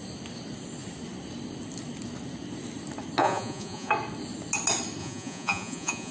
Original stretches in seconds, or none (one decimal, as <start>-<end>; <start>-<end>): 0.0-3.2; 3.9-5.0